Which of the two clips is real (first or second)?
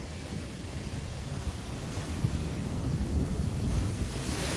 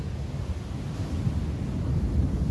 second